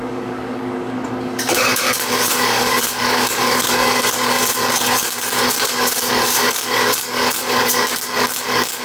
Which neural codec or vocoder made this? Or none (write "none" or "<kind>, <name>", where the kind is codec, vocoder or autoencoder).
codec, DAC